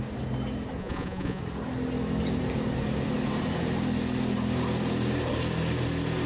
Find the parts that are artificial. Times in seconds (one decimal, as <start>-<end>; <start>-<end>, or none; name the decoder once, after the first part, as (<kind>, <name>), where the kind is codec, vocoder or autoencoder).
0.8-1.4 (vocoder, Vocos)